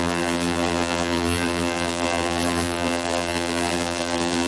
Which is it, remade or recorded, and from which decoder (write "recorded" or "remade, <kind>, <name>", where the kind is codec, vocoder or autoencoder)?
remade, vocoder, BigVGAN v2